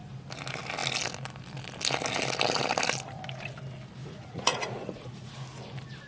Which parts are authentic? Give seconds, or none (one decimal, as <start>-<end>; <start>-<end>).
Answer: 0.0-4.0; 5.3-6.1